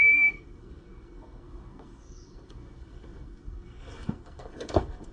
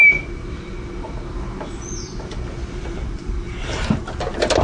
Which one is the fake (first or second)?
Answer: first